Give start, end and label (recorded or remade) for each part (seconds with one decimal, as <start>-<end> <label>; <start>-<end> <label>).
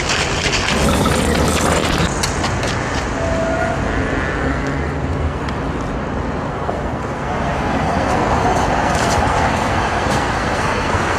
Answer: 0.0-4.4 recorded; 4.4-5.4 remade; 5.4-6.5 recorded; 6.5-11.2 remade